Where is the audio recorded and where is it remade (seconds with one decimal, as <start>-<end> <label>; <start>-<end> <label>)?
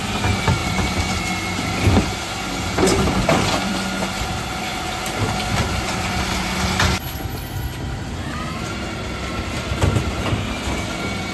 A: 0.0-11.3 recorded